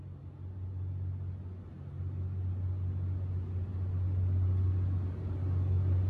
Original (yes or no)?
yes